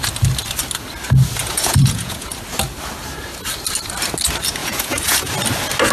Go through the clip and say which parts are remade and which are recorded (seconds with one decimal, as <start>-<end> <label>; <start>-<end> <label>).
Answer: 0.0-1.4 recorded; 1.4-2.3 remade; 2.3-4.6 recorded; 4.6-5.3 remade; 5.3-5.9 recorded